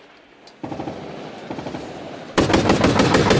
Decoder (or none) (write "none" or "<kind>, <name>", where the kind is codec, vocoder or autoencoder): none